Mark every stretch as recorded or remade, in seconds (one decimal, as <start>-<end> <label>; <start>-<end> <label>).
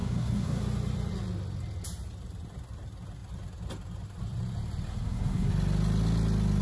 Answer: 0.0-0.6 remade; 0.6-4.9 recorded; 4.9-5.5 remade; 5.5-6.6 recorded